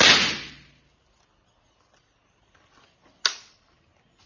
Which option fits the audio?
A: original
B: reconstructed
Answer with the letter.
A